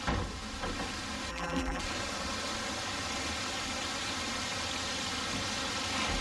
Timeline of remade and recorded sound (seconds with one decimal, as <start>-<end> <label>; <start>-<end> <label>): 0.0-1.3 recorded; 1.3-1.8 remade; 1.8-6.2 recorded